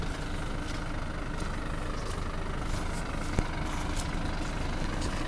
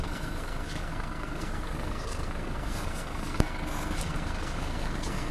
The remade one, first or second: second